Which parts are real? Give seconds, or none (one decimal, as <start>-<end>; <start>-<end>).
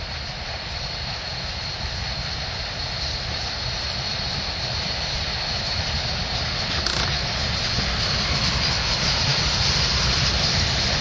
0.0-11.0